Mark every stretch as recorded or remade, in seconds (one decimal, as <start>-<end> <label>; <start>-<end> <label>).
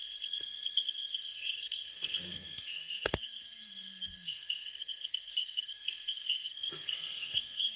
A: 0.0-7.8 remade